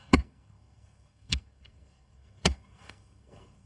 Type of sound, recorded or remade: remade